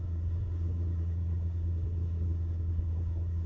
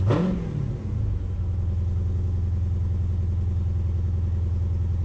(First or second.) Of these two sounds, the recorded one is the second